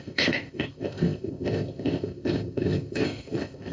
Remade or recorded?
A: remade